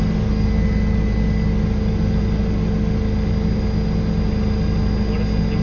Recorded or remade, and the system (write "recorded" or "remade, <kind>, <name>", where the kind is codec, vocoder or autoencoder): recorded